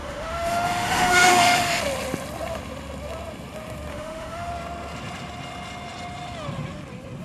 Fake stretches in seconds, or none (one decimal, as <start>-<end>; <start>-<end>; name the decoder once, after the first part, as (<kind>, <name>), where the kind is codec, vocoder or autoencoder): 0.0-1.8 (autoencoder, DAC-VAE); 3.9-4.5

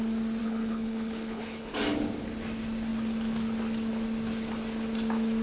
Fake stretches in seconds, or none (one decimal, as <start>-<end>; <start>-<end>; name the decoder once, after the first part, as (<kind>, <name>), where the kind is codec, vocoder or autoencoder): 0.4-1.7 (codec, HILCodec)

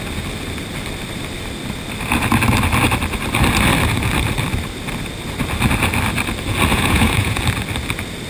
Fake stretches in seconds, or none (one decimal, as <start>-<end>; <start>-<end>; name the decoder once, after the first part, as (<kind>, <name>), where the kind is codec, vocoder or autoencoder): 6.7-7.4 (vocoder, Vocos)